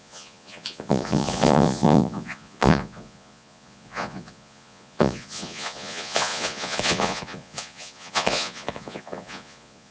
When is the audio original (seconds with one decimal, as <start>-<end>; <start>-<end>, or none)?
none